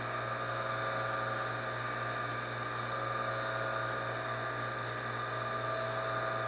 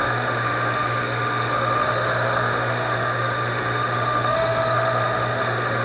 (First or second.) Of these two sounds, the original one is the first